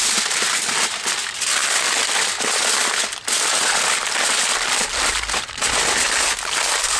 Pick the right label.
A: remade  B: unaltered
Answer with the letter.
B